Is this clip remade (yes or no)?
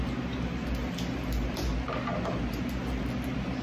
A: no